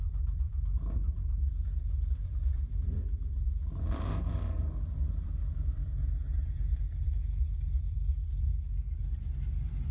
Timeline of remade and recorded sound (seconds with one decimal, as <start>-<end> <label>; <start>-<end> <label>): 0.0-8.5 remade; 8.5-9.9 recorded